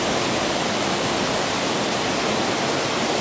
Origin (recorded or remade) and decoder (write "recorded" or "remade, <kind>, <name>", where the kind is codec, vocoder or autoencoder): recorded